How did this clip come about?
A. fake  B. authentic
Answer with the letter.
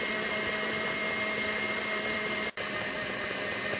A